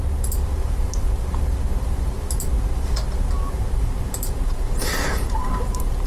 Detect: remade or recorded recorded